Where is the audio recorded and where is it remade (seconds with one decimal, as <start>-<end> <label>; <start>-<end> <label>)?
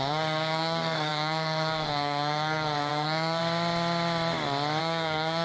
0.0-3.4 remade; 3.4-4.8 recorded; 4.8-5.4 remade